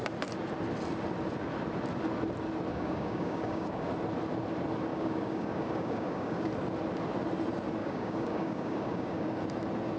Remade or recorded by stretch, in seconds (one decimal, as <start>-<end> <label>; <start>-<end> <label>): 0.0-2.7 recorded; 2.7-3.9 remade; 3.9-4.9 recorded; 4.9-6.5 remade; 6.5-7.8 recorded; 7.8-9.4 remade; 9.4-10.0 recorded